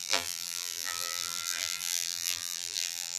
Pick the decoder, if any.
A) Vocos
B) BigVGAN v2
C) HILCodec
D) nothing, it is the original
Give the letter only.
B